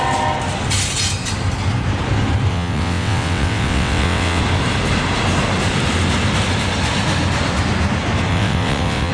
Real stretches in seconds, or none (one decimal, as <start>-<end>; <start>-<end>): 0.0-2.5; 4.4-8.3